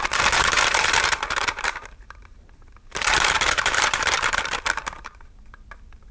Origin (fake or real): fake